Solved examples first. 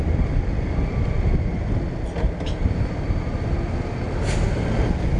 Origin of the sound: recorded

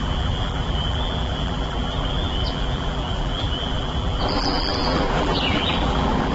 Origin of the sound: remade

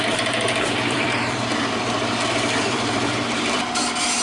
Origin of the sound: remade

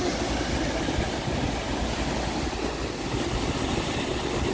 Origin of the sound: recorded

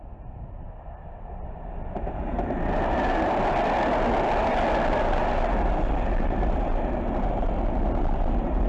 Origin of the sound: recorded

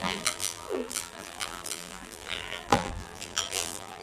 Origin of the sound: remade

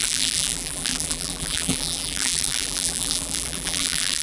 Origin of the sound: remade